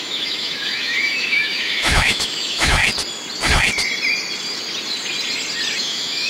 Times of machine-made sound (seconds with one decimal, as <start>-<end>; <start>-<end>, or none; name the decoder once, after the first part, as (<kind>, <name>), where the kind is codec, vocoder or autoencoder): 0.0-2.8 (autoencoder, DAC-VAE); 5.8-6.3